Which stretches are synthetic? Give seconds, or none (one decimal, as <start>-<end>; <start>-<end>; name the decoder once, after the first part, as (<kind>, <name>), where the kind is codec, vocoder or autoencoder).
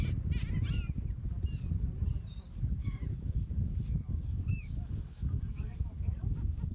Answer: 2.8-6.7 (codec, DAC)